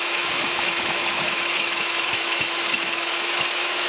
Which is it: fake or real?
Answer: fake